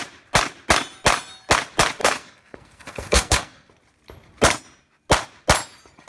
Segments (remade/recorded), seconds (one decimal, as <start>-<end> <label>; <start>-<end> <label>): 0.0-2.0 recorded; 2.0-3.7 remade; 3.7-6.1 recorded